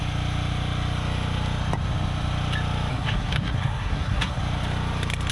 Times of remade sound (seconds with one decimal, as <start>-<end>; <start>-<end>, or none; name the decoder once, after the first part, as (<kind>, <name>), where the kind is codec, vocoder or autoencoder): 2.9-4.4 (codec, SNAC)